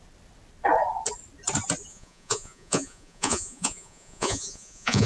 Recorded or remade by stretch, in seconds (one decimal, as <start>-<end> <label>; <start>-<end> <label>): 0.0-1.9 recorded; 1.9-5.1 remade